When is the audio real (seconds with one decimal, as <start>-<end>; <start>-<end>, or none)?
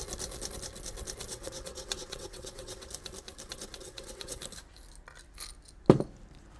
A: 0.0-1.3; 2.9-3.8; 4.4-6.6